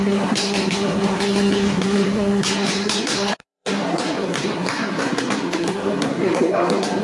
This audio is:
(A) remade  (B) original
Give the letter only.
A